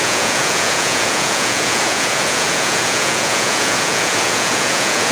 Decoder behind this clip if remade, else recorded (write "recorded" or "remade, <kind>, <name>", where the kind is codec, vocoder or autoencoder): remade, vocoder, Vocos